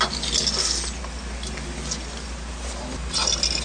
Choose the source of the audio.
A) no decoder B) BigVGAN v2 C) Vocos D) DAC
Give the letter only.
A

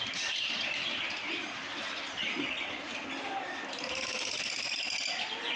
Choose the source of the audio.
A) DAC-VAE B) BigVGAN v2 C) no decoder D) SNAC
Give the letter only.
C